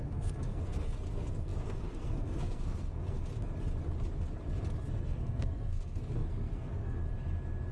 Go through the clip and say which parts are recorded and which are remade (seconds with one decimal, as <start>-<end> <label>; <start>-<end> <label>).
0.0-3.3 remade; 3.3-4.9 recorded; 4.9-7.0 remade; 7.0-7.7 recorded

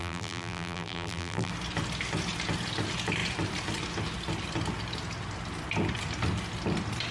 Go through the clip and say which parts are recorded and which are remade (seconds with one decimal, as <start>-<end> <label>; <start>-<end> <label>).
0.0-1.5 remade; 1.5-7.1 recorded